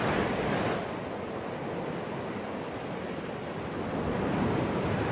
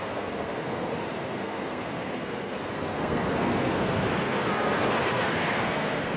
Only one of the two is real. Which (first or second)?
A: first